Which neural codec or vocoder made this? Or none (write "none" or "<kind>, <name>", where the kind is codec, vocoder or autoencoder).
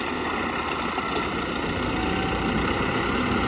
none